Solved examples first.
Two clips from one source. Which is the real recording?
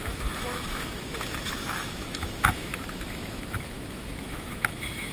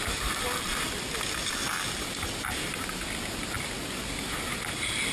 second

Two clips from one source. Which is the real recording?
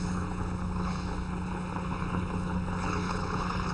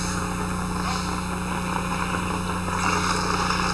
second